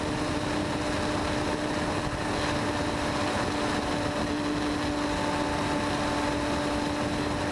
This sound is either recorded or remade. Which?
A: recorded